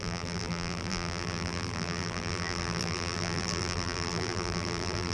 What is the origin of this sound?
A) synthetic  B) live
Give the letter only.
A